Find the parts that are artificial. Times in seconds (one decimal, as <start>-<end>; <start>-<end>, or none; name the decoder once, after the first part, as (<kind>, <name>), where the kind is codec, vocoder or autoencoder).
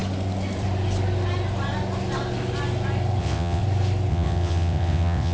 3.2-3.6 (vocoder, WaveNeXt); 4.1-5.3